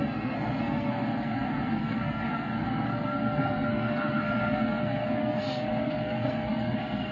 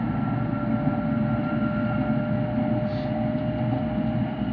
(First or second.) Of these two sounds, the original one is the second